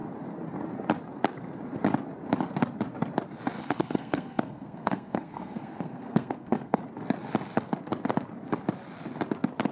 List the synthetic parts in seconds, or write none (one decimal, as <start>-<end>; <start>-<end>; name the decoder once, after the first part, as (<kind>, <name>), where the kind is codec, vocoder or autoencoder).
3.6-6.8 (codec, SNAC)